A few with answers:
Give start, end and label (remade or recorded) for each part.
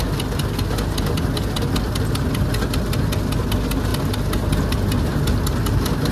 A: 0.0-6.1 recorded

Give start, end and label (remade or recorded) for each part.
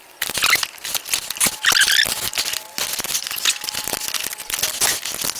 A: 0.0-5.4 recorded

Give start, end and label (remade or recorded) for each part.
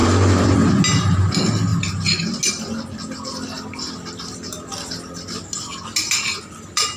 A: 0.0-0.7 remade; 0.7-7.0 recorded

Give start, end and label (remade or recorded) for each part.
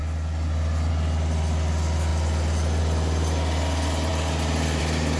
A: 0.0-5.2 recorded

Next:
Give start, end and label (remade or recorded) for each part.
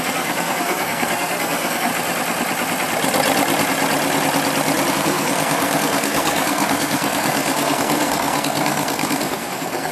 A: 0.0-1.9 remade; 1.9-4.9 recorded; 4.9-9.9 remade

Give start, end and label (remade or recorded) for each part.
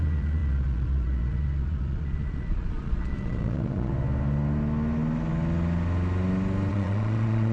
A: 0.0-3.9 remade; 3.9-6.7 recorded; 6.7-7.5 remade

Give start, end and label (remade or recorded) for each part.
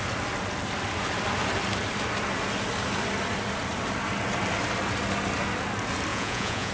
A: 0.0-6.1 recorded; 6.1-6.7 remade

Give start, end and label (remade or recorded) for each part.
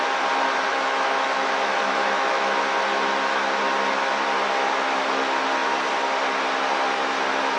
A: 0.0-0.7 recorded; 0.7-2.6 remade; 2.6-7.6 recorded